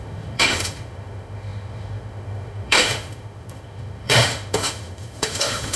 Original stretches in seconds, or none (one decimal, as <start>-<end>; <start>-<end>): none